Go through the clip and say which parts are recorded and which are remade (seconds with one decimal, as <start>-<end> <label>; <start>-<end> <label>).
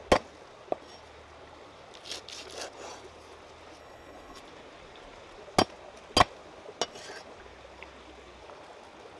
0.0-3.8 recorded; 3.8-4.4 remade; 4.4-9.2 recorded